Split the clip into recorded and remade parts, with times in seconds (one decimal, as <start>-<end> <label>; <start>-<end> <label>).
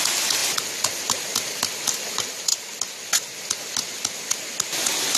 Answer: 0.0-5.2 recorded